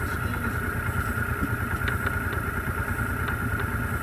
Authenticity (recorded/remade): recorded